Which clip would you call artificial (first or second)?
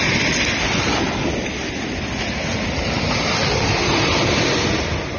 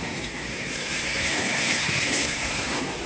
second